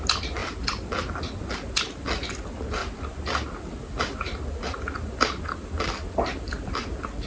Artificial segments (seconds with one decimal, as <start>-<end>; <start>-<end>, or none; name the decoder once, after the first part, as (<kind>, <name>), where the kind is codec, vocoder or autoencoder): none